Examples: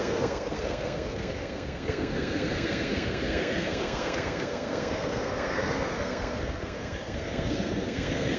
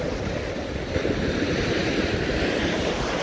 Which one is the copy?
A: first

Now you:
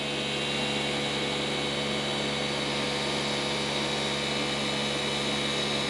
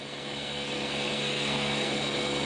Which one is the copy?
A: second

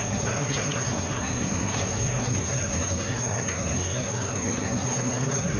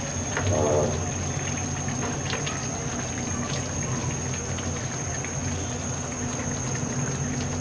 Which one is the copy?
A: first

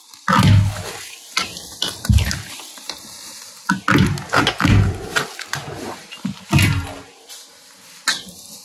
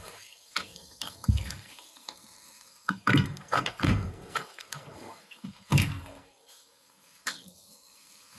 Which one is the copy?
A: second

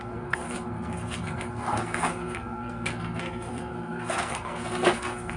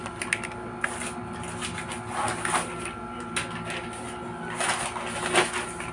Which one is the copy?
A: first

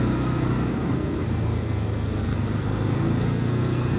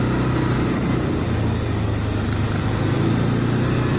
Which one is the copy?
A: first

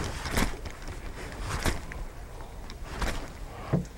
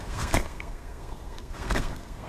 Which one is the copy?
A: second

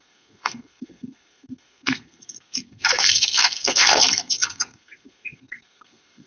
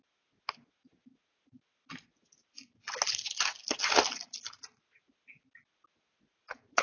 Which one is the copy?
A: first